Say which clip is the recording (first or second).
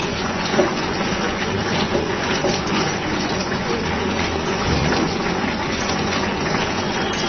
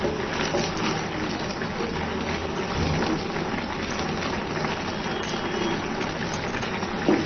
second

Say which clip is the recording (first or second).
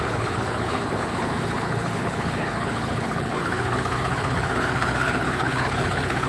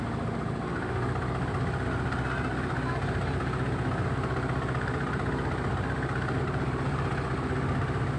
second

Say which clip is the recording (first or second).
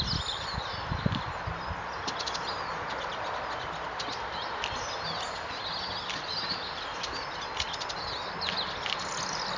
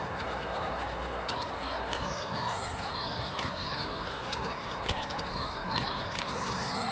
first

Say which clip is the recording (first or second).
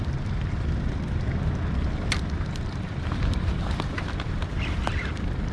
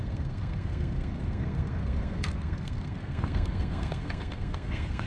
first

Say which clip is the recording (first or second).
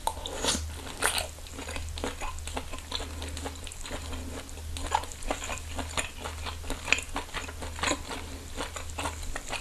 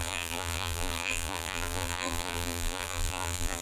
first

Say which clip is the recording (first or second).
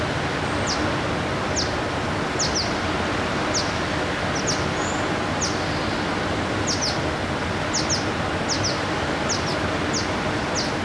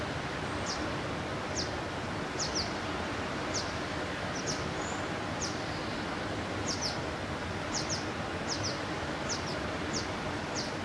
first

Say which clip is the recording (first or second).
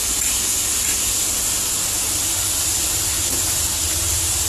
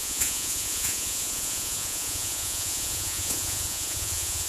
first